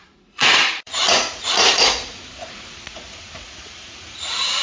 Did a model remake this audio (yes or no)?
yes